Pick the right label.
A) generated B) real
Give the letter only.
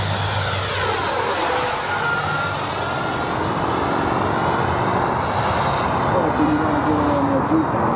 B